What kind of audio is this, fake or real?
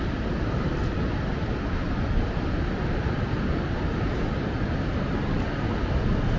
real